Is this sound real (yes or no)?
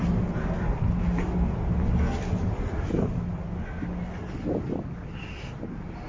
yes